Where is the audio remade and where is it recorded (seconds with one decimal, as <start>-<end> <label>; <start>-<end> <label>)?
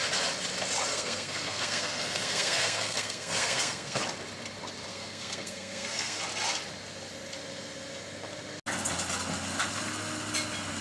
0.0-0.9 recorded; 0.9-4.0 remade; 4.0-4.9 recorded; 4.9-6.2 remade; 6.2-10.8 recorded